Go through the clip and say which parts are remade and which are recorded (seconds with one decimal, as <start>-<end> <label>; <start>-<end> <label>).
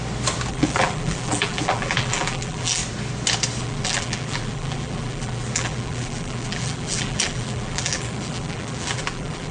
0.0-0.5 recorded; 0.5-2.8 remade; 2.8-3.6 recorded; 3.6-9.5 remade